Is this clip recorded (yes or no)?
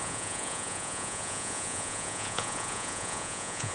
no